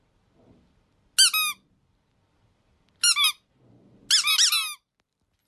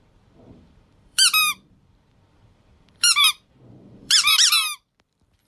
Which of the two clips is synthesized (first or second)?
second